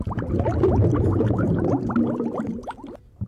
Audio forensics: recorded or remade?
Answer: recorded